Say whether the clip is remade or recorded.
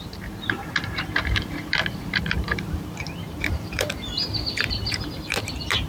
remade